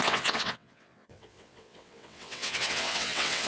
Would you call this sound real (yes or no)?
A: no